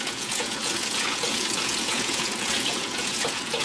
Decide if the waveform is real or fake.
fake